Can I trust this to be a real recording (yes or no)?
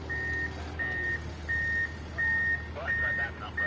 yes